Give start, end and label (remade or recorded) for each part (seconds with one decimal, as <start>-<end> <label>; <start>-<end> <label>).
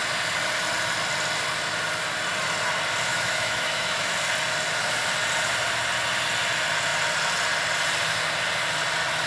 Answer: 0.0-3.1 recorded; 3.1-4.1 remade; 4.1-9.3 recorded